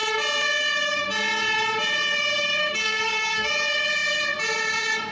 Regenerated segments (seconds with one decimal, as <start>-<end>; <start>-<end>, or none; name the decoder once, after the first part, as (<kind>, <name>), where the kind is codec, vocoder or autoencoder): 2.6-3.5 (codec, SNAC)